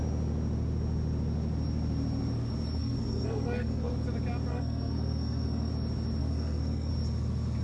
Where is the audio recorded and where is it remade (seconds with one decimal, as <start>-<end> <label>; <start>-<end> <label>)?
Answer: 0.0-2.8 recorded; 2.8-3.9 remade; 3.9-4.5 recorded; 4.5-5.7 remade; 5.7-6.2 recorded; 6.2-6.9 remade; 6.9-7.6 recorded